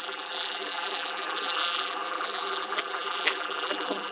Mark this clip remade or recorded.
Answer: remade